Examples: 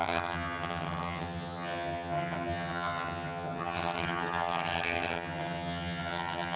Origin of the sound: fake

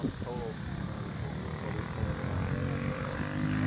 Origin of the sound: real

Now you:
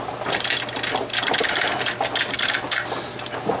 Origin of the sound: real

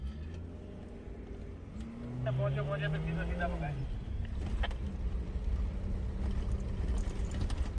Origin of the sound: real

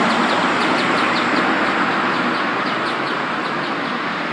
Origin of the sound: real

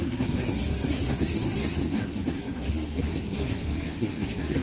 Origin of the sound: fake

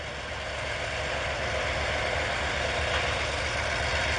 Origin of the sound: real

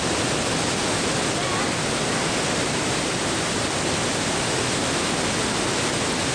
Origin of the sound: real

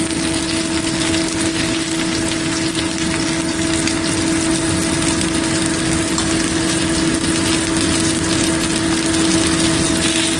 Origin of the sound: real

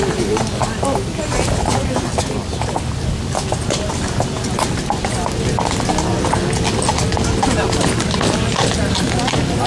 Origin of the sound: real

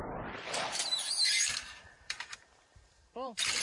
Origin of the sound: fake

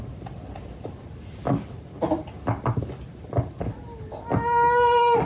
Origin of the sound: real